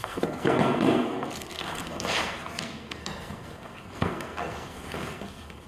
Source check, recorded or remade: remade